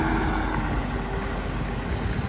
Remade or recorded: recorded